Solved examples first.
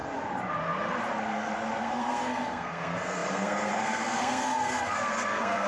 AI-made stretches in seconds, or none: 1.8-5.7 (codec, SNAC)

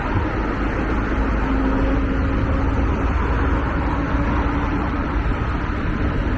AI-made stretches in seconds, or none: 4.7-5.5 (vocoder, BigVGAN v2)

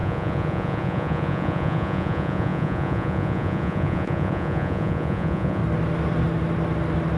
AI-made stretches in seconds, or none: 0.0-5.6 (vocoder, Vocos)